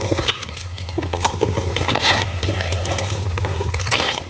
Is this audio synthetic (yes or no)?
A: yes